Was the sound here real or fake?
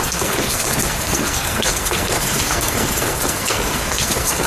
fake